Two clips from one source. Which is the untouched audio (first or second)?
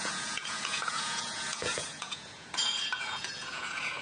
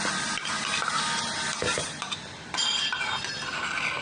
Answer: second